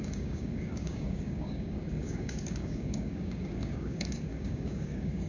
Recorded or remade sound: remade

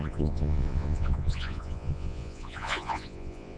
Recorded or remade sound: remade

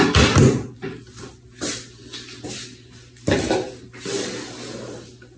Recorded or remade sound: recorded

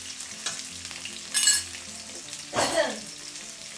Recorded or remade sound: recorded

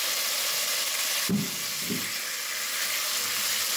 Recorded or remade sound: recorded